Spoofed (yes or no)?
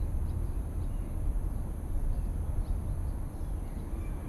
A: no